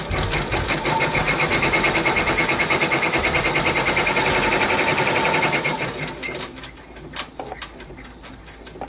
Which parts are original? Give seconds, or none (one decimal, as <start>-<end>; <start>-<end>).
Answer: 0.0-8.9